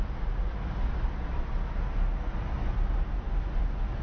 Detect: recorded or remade recorded